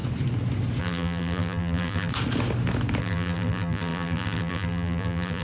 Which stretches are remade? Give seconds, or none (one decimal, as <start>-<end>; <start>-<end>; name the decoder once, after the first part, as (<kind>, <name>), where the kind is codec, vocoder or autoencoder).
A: 0.8-2.1 (vocoder, BigVGAN v2); 3.0-5.4